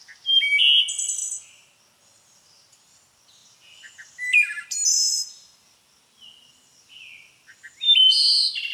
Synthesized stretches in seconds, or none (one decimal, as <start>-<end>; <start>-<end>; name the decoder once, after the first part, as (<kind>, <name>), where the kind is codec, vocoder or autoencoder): none